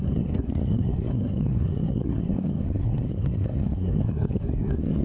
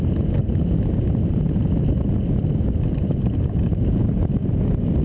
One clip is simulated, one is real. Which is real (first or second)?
second